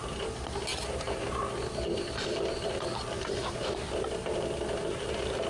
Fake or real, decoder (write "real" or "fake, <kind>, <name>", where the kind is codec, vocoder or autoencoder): real